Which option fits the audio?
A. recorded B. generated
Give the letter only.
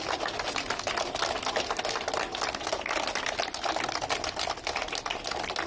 A